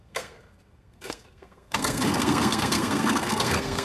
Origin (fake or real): fake